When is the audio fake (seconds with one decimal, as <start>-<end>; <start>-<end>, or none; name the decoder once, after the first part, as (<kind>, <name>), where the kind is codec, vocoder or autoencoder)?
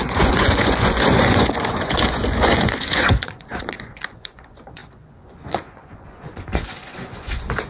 0.0-7.7 (vocoder, Vocos)